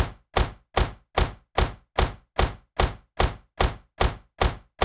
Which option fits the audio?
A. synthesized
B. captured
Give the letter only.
B